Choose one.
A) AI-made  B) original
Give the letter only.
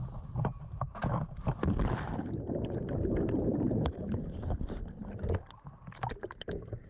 B